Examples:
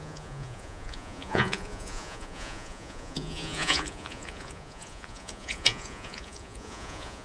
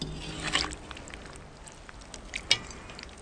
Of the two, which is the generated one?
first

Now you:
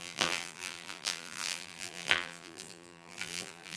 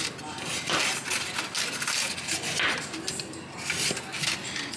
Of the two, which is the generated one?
first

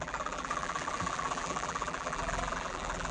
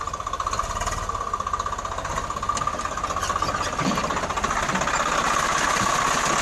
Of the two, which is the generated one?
first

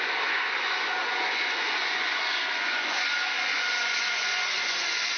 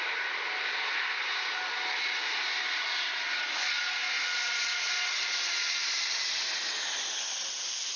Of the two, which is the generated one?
first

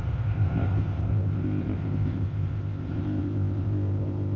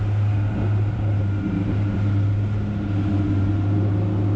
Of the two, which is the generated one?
first